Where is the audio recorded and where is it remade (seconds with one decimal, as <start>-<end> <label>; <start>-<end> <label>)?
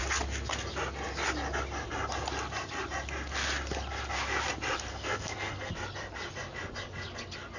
0.0-4.9 recorded; 4.9-5.7 remade; 5.7-7.6 recorded